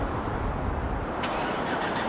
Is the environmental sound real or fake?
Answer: real